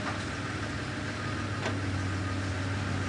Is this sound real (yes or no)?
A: yes